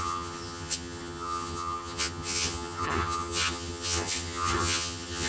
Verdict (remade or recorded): remade